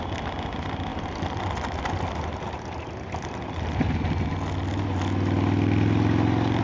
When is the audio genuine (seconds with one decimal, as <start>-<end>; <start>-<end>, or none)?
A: 0.0-6.6